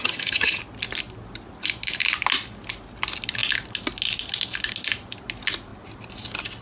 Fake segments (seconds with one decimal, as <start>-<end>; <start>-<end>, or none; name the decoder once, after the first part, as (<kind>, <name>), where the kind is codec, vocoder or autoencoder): 0.0-0.6 (vocoder, HiFi-GAN)